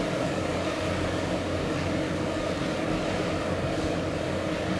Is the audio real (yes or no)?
no